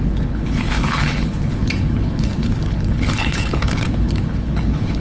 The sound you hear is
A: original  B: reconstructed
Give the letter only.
B